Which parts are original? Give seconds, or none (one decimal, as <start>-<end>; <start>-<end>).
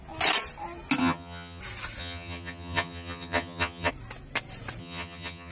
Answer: 0.0-1.0; 1.6-2.0; 3.9-4.8